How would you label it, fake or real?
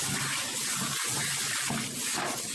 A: real